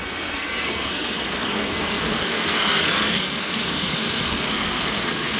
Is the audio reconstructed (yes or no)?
yes